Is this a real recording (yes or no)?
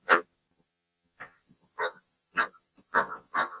no